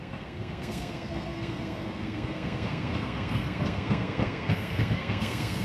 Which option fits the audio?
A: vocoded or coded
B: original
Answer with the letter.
A